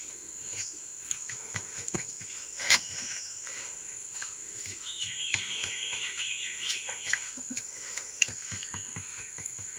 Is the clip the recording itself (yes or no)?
no